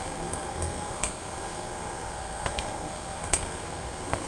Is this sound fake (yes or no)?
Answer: yes